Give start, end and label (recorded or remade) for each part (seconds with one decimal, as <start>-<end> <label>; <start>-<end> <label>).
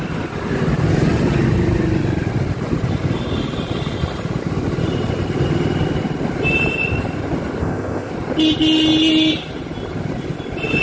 0.0-7.6 recorded; 7.6-8.1 remade; 8.1-10.8 recorded